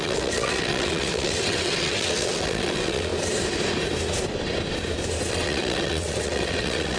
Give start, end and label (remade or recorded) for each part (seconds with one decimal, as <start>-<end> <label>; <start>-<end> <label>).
0.0-3.1 remade; 3.1-5.3 recorded; 5.3-7.0 remade